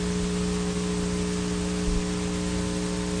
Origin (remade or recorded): recorded